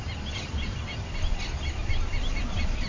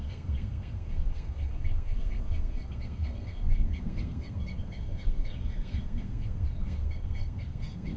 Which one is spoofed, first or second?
second